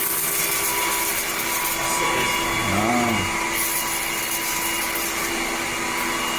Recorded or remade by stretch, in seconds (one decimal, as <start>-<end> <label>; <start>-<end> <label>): 0.0-6.4 recorded